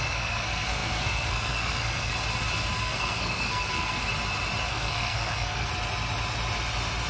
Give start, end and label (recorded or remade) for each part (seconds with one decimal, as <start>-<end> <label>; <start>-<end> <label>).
0.0-2.1 remade; 2.1-2.8 recorded; 2.8-4.1 remade; 4.1-4.7 recorded; 4.7-5.7 remade; 5.7-7.1 recorded